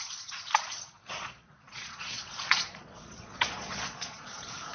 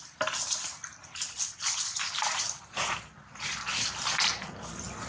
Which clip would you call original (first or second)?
second